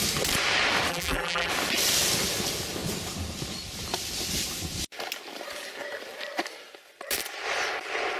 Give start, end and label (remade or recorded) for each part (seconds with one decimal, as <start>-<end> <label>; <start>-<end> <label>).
0.0-0.9 recorded; 0.9-1.5 remade; 1.5-8.2 recorded